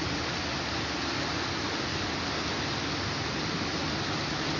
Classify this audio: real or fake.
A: real